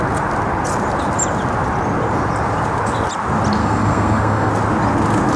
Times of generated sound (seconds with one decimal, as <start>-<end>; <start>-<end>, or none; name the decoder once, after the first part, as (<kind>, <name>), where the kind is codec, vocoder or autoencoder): 3.6-4.5 (codec, SNAC)